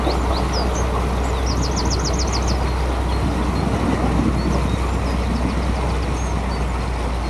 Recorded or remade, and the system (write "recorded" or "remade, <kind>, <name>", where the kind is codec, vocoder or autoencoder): recorded